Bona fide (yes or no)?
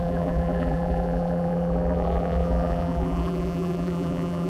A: no